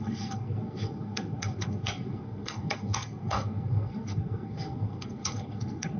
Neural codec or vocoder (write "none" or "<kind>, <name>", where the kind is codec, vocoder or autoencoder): codec, SNAC